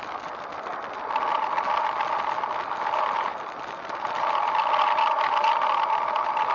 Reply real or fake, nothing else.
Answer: real